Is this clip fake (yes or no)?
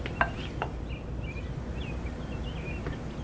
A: no